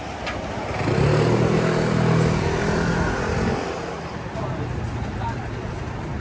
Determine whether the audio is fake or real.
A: real